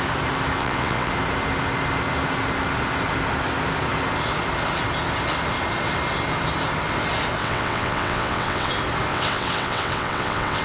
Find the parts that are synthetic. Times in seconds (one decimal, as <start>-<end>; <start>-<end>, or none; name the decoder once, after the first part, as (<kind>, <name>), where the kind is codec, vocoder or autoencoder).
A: 0.6-1.1 (vocoder, WaveNeXt); 7.4-8.7; 9.1-10.6